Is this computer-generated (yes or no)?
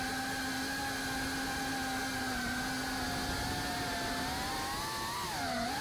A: no